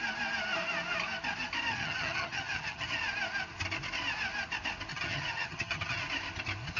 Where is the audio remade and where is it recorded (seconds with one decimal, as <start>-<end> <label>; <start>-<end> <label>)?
0.0-1.7 recorded; 1.7-3.0 remade; 3.0-4.9 recorded; 4.9-6.0 remade; 6.0-6.8 recorded

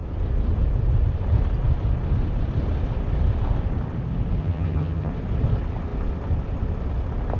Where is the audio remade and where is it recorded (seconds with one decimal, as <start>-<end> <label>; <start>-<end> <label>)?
0.0-4.4 recorded; 4.4-5.1 remade; 5.1-7.4 recorded

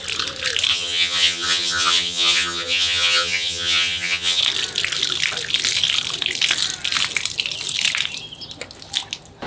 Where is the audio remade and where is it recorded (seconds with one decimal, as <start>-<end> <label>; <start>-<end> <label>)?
0.0-0.7 recorded; 0.7-4.4 remade; 4.4-9.5 recorded

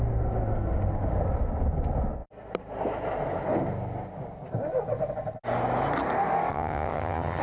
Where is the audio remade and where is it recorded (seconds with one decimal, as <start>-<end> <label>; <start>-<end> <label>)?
0.0-6.5 recorded; 6.5-7.4 remade